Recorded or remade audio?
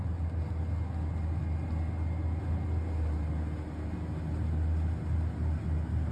recorded